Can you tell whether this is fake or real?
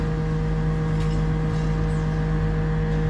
real